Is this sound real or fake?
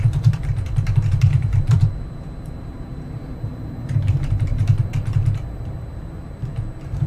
fake